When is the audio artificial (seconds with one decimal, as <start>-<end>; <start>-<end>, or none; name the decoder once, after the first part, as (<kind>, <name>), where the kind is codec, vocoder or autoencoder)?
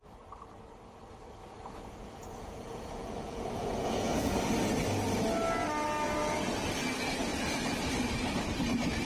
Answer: 1.4-4.4 (vocoder, Vocos)